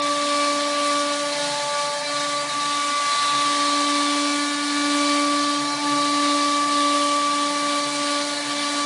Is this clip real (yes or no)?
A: yes